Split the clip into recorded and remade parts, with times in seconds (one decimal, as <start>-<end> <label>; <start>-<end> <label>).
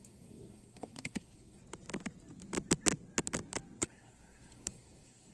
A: 0.0-1.6 remade; 1.6-3.8 recorded; 3.8-5.3 remade